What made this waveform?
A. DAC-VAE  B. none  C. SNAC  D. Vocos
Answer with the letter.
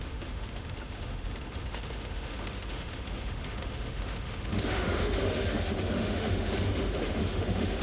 A